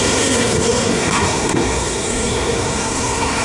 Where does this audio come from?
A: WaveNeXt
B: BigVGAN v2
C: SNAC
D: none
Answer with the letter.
C